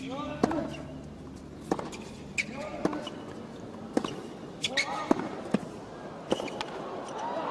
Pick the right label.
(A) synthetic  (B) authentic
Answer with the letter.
B